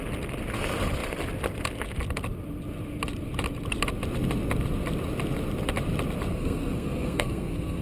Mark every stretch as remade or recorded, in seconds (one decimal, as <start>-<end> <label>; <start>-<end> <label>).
0.0-6.3 recorded; 6.3-7.8 remade